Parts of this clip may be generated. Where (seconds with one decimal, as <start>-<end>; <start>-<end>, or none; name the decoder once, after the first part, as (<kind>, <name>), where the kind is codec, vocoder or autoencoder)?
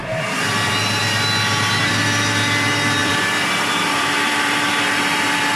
0.0-0.7 (vocoder, BigVGAN v2); 3.0-4.7